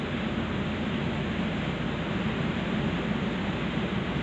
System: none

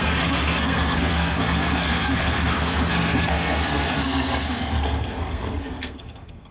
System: codec, SNAC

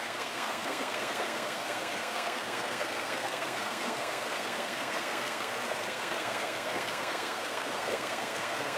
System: codec, SNAC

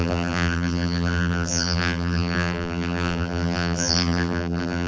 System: vocoder, BigVGAN v2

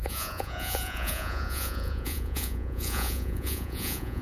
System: vocoder, Vocos